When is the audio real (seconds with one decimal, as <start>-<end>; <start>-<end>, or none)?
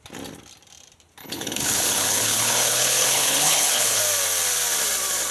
0.0-1.2; 4.0-5.3